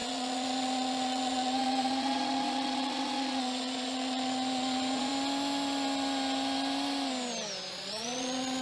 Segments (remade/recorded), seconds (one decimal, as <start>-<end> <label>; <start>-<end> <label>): 0.0-5.1 remade; 5.1-7.7 recorded; 7.7-8.6 remade